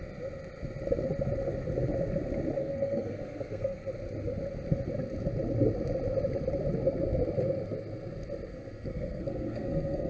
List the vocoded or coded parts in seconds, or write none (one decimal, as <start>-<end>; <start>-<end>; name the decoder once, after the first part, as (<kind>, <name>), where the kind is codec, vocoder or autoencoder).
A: 2.6-3.9 (codec, SNAC); 8.5-10.1

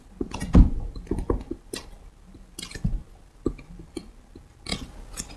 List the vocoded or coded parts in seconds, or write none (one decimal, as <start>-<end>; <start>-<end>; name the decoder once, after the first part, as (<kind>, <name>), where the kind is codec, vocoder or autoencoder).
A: none

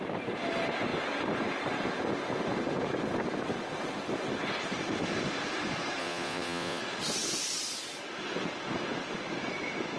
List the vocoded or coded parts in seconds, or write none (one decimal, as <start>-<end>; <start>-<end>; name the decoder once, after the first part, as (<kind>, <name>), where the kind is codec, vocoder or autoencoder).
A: 6.0-6.8 (vocoder, Vocos)

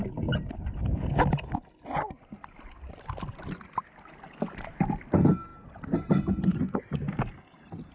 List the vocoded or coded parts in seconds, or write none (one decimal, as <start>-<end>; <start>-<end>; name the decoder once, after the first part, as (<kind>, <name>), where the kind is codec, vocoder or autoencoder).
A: none

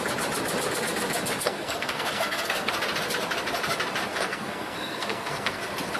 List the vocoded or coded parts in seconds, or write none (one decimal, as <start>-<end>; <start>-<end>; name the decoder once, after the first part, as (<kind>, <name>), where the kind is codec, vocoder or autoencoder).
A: 1.4-2.7 (codec, SNAC); 4.1-5.6

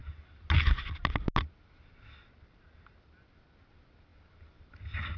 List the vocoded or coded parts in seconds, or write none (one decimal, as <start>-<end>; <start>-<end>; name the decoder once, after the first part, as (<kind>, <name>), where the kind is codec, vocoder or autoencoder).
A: none

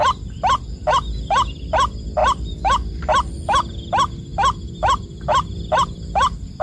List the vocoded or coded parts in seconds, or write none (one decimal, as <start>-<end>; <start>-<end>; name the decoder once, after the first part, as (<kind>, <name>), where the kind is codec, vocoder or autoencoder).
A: none

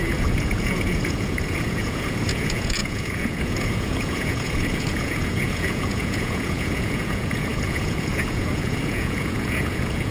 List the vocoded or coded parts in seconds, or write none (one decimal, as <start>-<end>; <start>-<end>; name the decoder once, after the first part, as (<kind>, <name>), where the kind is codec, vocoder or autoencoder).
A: 0.0-10.1 (vocoder, Vocos)